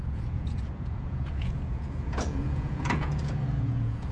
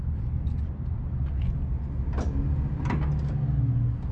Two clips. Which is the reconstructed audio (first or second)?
first